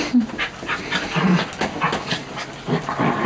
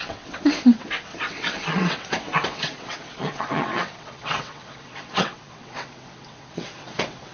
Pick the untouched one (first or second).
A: first